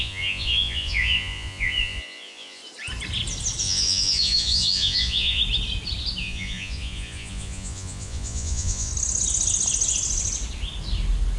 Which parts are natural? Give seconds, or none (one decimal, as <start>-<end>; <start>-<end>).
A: 2.6-3.6; 5.4-6.2; 8.9-11.4